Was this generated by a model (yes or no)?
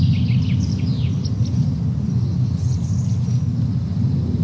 no